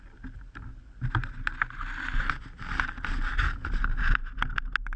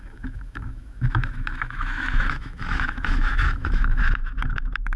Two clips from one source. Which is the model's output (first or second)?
second